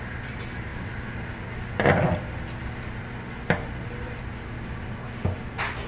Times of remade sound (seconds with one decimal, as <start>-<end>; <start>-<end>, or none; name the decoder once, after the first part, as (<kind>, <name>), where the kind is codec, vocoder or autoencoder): none